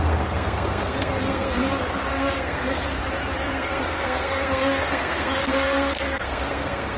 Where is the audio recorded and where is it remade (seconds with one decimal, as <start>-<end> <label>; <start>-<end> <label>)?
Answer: 0.0-3.0 remade; 3.0-3.5 recorded; 3.5-7.0 remade